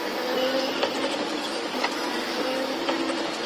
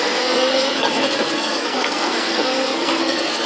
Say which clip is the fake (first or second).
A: second